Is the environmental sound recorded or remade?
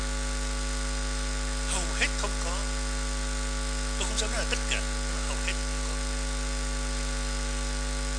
recorded